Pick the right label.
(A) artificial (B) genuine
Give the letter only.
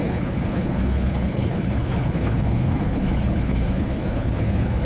A